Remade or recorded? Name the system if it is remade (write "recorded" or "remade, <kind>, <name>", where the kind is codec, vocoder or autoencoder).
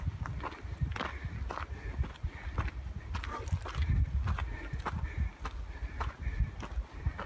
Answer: recorded